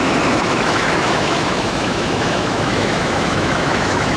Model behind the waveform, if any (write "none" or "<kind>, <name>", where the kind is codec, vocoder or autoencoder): autoencoder, DAC-VAE